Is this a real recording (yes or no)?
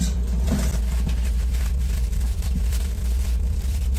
no